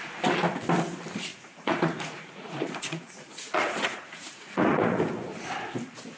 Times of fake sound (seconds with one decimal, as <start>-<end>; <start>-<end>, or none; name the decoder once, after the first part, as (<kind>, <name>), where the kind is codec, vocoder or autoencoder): 1.3-5.0 (vocoder, Vocos)